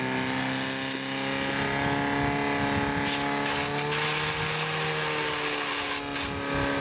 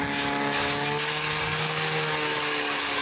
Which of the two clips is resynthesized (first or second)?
second